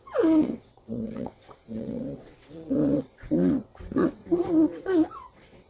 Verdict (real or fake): fake